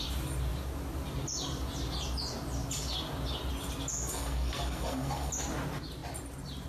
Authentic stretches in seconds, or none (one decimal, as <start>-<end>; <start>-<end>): 0.0-3.9; 5.3-6.7

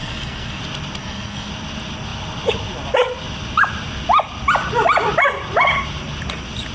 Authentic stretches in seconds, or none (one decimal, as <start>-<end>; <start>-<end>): 0.6-1.0; 1.5-6.7

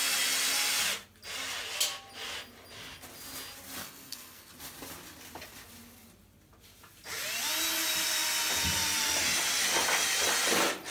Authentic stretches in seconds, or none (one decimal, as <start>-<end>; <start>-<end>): 0.0-3.8; 4.5-10.9

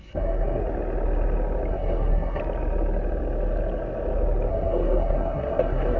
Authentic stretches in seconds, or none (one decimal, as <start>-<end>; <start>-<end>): 0.6-1.7; 2.4-4.5